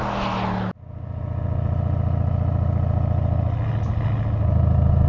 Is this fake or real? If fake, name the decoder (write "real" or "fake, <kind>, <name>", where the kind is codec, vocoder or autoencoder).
real